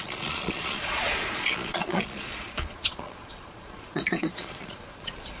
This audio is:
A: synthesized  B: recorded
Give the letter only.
A